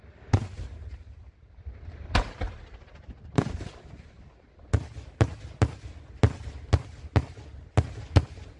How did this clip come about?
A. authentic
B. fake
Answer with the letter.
A